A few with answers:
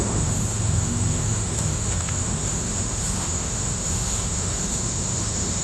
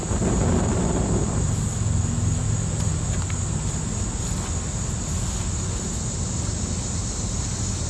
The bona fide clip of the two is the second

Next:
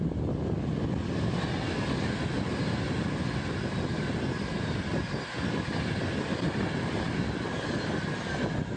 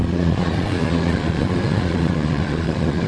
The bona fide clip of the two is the first